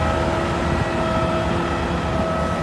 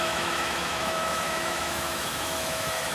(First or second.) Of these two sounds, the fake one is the second